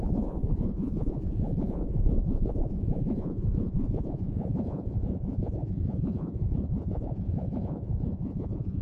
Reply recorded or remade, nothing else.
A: remade